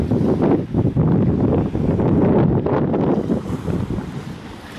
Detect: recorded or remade recorded